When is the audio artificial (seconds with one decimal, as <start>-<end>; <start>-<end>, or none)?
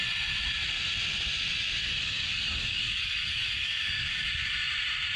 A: 1.8-4.5